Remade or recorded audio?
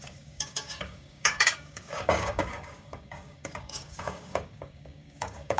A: remade